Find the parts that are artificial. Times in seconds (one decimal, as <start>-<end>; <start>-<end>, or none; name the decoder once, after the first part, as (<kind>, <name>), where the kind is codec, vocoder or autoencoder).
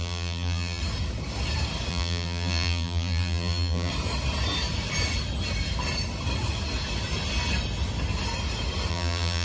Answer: 0.0-0.8 (vocoder, BigVGAN v2); 1.9-3.9; 8.9-9.4